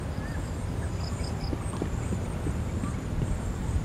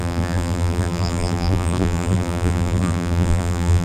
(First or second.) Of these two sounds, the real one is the first